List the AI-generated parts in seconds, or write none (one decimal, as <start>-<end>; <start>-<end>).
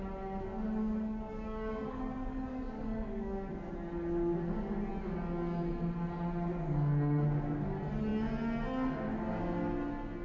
0.8-3.5